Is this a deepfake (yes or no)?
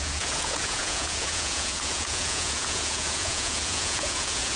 yes